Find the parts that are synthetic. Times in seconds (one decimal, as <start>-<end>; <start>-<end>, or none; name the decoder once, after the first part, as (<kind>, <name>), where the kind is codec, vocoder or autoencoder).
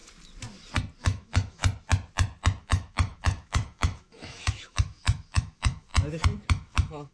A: 1.0-1.6 (autoencoder, DAC-VAE); 2.6-5.9; 6.5-7.1